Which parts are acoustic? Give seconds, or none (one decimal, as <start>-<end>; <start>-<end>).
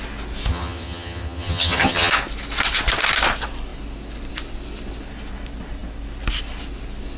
0.0-0.5; 2.1-7.2